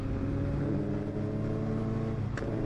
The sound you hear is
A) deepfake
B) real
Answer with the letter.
B